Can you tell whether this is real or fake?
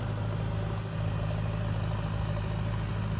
real